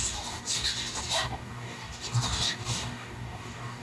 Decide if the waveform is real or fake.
fake